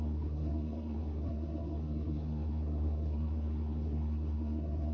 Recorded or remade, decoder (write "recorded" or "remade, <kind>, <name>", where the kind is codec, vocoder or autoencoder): remade, codec, SNAC